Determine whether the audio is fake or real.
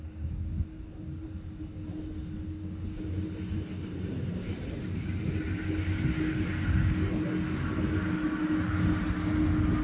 real